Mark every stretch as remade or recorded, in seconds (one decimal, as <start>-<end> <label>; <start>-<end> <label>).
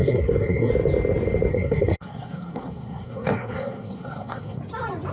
0.0-0.7 remade; 0.7-1.5 recorded; 1.5-4.6 remade; 4.6-5.1 recorded